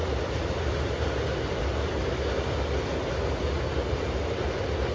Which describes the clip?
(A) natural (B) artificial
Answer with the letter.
A